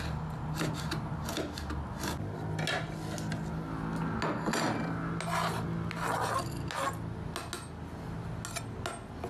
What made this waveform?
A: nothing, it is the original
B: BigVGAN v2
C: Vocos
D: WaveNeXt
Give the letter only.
A